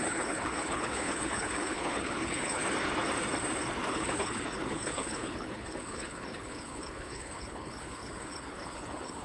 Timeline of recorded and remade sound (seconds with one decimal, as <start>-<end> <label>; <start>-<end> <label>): 0.0-2.6 remade; 2.6-3.9 recorded; 3.9-9.2 remade